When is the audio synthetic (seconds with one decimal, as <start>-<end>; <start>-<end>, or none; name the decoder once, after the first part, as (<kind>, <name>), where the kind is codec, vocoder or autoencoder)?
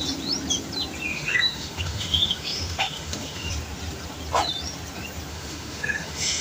1.1-3.5 (autoencoder, DAC-VAE); 5.3-6.4